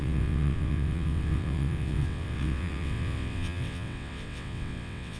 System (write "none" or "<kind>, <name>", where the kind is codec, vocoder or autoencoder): vocoder, WaveNeXt